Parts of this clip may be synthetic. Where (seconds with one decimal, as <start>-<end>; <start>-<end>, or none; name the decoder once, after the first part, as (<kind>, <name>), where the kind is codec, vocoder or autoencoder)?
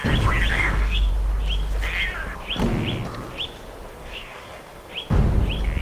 0.5-1.1 (codec, DAC); 3.9-4.9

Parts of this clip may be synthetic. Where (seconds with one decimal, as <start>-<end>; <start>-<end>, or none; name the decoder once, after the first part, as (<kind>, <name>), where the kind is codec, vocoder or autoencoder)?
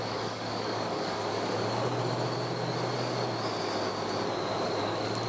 0.0-1.9 (codec, DAC); 4.8-5.3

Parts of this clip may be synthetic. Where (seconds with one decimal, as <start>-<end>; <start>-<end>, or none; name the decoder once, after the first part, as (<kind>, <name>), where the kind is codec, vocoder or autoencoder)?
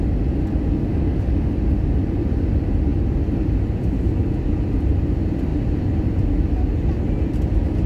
0.9-1.5 (codec, DAC)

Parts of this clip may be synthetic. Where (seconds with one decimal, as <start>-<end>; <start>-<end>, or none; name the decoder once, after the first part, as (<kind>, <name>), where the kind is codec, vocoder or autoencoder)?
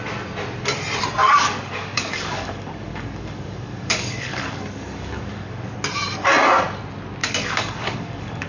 1.2-5.7 (codec, DAC); 7.2-8.5